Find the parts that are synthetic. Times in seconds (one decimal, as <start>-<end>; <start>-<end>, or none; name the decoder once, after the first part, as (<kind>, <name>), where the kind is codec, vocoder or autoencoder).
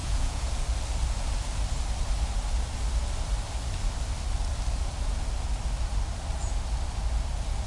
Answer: 0.0-0.5 (vocoder, Vocos)